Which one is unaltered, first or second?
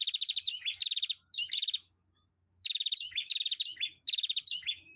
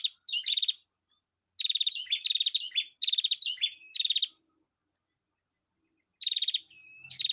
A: second